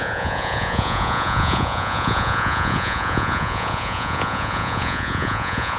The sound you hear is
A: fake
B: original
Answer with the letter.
A